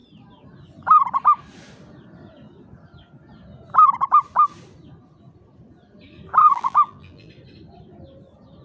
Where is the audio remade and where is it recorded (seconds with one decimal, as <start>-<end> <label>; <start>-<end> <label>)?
0.0-6.4 recorded; 6.4-7.3 remade; 7.3-8.6 recorded